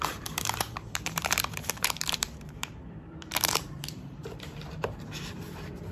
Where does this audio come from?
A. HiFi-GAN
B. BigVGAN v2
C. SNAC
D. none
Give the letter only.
B